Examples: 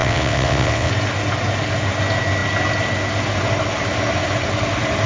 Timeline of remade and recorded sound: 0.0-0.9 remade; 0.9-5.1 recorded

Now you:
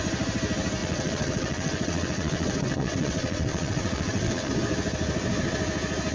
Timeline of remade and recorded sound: 0.0-0.8 recorded; 0.8-4.5 remade; 4.5-6.1 recorded

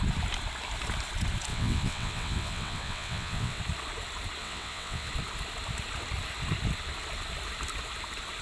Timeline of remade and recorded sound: 0.0-1.5 recorded; 1.5-3.6 remade; 3.6-4.4 recorded; 4.4-5.1 remade; 5.1-8.4 recorded

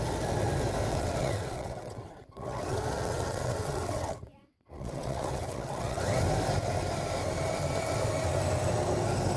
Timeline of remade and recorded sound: 0.0-0.9 recorded; 0.9-6.0 remade; 6.0-9.4 recorded

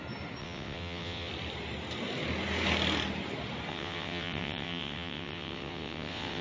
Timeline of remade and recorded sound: 0.0-0.4 recorded; 0.4-1.3 remade; 1.3-3.7 recorded; 3.7-6.4 remade

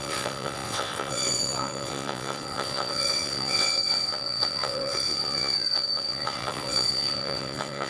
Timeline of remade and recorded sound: 0.0-7.9 remade

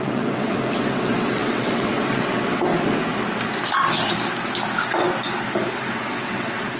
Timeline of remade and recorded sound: 0.0-2.7 remade; 2.7-5.8 recorded; 5.8-6.8 remade

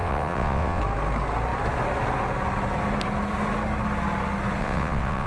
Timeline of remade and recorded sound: 0.0-0.8 remade; 0.8-4.6 recorded; 4.6-5.3 remade